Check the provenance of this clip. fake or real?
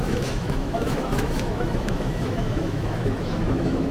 fake